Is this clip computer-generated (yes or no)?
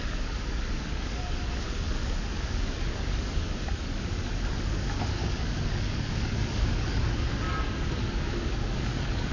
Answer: yes